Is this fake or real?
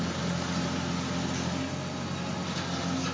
real